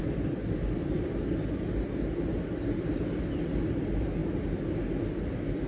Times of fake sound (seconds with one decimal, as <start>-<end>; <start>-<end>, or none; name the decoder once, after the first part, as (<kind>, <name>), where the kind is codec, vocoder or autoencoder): none